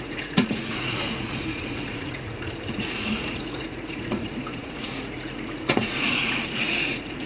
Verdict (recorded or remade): remade